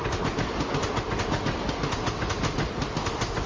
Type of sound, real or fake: real